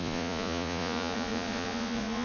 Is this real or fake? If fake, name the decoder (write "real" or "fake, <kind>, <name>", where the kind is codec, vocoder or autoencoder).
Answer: fake, vocoder, Vocos